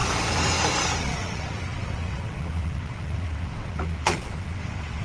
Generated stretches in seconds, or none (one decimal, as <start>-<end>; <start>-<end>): 1.0-5.0